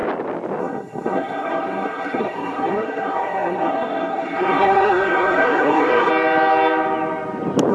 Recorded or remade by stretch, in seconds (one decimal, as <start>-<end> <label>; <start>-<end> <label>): 0.0-0.6 recorded; 0.6-6.1 remade; 6.1-7.7 recorded